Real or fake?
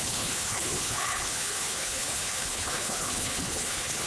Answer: fake